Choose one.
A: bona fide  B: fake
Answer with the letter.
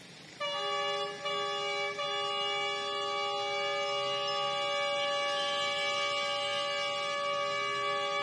A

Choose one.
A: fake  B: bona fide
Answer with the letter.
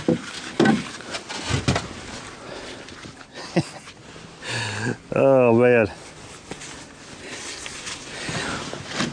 B